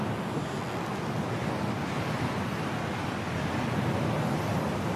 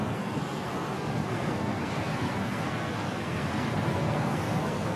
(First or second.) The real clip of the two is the first